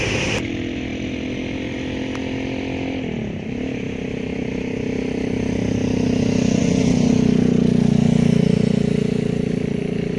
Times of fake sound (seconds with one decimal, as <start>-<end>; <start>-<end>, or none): 6.6-7.1